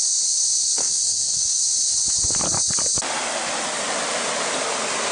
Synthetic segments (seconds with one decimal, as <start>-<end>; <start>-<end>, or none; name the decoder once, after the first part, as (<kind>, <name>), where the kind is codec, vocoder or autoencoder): 0.8-1.6 (codec, SNAC)